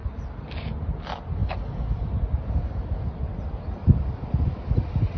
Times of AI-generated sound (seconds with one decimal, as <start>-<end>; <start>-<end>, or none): none